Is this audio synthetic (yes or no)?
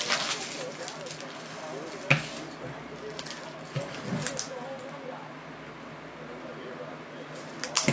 no